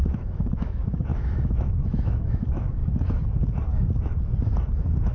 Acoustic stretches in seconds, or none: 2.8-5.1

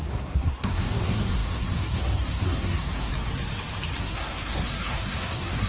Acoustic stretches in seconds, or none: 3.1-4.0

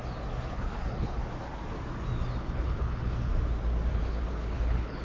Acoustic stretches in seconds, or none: 0.0-0.5; 1.2-2.4; 3.3-3.9

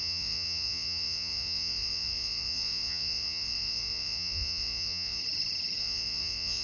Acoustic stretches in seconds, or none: 5.2-5.8